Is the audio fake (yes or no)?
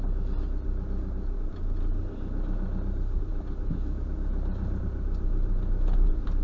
no